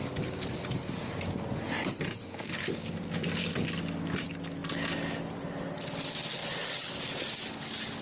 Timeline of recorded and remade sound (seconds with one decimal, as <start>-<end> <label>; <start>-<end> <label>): 0.0-8.0 recorded